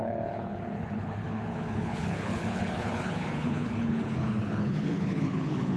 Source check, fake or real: fake